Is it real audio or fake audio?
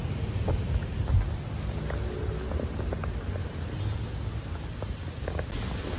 real